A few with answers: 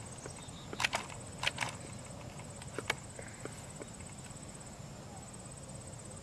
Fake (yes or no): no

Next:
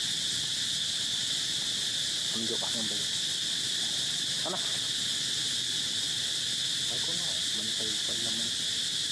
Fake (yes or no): no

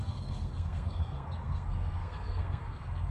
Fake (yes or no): yes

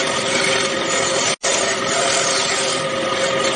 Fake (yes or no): no